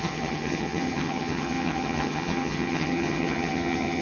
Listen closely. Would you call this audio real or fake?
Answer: fake